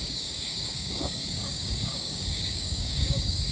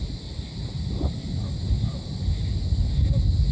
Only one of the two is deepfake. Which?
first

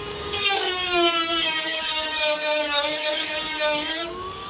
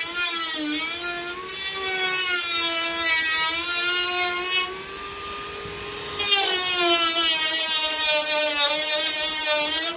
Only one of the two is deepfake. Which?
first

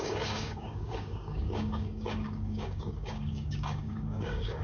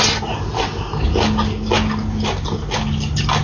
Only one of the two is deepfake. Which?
first